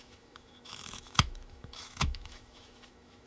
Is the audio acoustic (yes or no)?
no